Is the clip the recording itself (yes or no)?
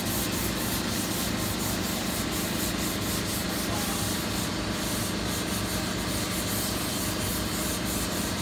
yes